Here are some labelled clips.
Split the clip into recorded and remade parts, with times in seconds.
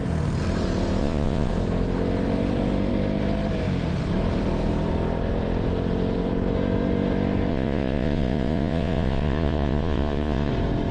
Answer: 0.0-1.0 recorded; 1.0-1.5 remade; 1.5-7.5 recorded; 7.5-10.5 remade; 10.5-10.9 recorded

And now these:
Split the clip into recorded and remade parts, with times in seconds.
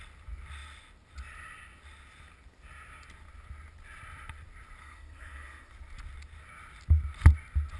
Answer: 0.0-4.8 recorded; 4.8-5.7 remade; 5.7-7.8 recorded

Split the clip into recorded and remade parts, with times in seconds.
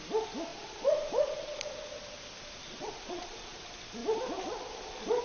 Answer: 0.0-0.5 recorded; 0.5-1.7 remade; 1.7-2.6 recorded; 2.6-3.6 remade; 3.6-5.2 recorded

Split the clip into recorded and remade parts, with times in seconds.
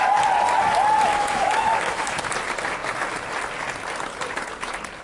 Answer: 0.0-1.1 recorded; 1.1-2.2 remade; 2.2-5.0 recorded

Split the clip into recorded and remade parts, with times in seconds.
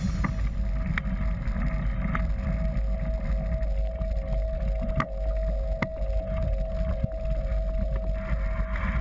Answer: 0.0-9.0 recorded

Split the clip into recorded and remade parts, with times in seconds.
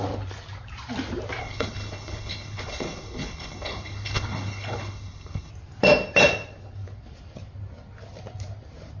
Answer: 0.0-1.4 recorded; 1.4-5.5 remade; 5.5-9.0 recorded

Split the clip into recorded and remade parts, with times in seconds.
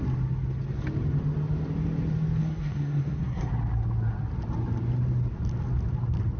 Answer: 0.0-2.4 recorded; 2.4-3.5 remade; 3.5-6.4 recorded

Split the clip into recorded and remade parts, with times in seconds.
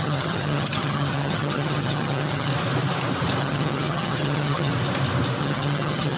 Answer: 0.0-2.5 remade; 2.5-3.4 recorded; 3.4-4.7 remade; 4.7-5.4 recorded; 5.4-6.2 remade